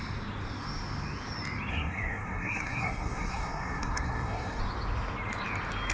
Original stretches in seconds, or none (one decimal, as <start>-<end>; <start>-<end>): 0.0-1.7; 4.6-5.9